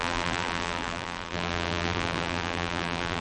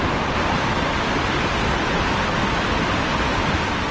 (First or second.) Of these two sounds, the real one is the second